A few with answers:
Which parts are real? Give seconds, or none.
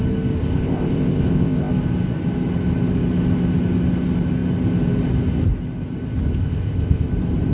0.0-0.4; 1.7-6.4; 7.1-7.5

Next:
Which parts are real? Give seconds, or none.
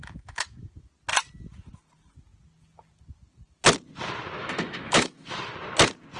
0.7-4.4; 5.5-6.2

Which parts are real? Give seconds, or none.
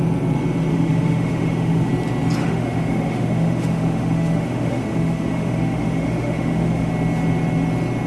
0.0-0.7; 1.9-2.4; 6.9-8.1